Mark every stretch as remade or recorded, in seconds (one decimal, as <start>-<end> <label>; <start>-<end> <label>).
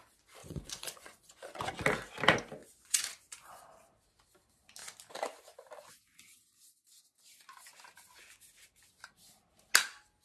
0.0-0.4 recorded; 0.4-1.7 remade; 1.7-2.6 recorded; 2.6-3.6 remade; 3.6-10.2 recorded